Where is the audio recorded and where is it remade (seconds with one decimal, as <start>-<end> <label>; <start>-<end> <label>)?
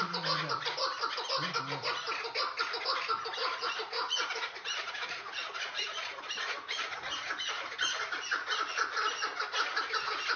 0.0-3.4 recorded; 3.4-8.0 remade; 8.0-10.4 recorded